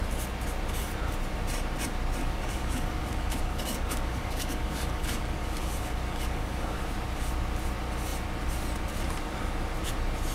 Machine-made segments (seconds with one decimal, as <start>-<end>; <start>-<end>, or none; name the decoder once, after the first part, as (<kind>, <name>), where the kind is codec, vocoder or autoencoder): 2.2-6.8 (codec, DAC)